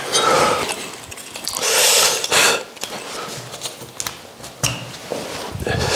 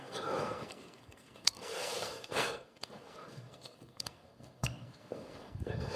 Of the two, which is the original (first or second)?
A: first